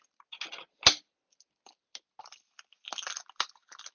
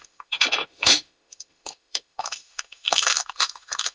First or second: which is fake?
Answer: second